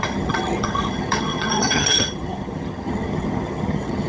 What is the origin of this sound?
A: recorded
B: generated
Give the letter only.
B